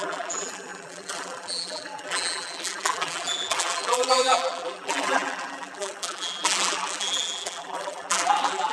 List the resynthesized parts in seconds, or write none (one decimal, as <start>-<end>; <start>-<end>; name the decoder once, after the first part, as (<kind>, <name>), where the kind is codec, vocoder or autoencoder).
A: 0.0-8.7 (vocoder, BigVGAN v2)